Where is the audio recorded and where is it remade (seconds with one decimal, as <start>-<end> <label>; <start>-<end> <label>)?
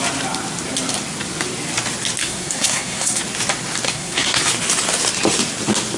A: 0.0-2.2 recorded; 2.2-3.2 remade; 3.2-3.9 recorded; 3.9-4.4 remade; 4.4-6.0 recorded